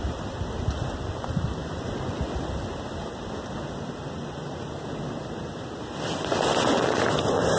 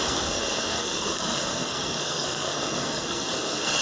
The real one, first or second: first